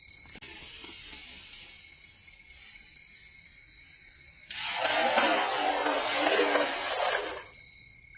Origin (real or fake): real